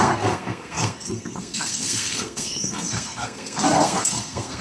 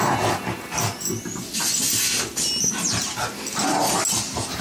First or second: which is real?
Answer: second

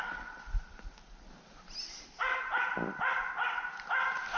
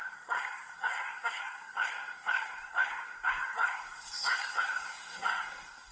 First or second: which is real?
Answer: first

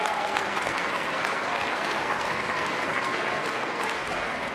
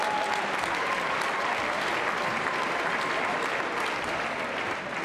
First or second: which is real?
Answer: second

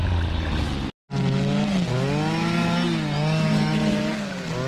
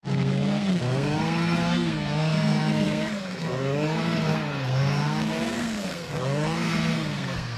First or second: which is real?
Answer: first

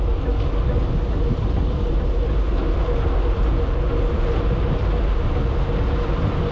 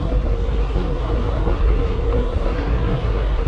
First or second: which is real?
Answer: first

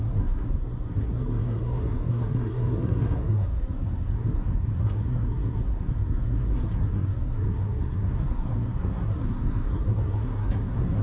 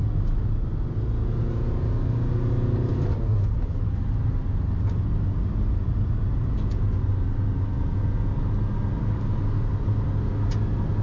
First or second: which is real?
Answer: second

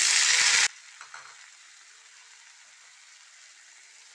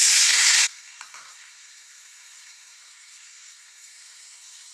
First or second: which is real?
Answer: first